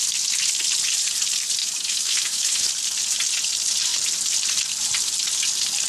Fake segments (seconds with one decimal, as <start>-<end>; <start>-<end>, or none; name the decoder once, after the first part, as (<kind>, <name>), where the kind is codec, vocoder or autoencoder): 1.6-2.7 (autoencoder, DAC-VAE)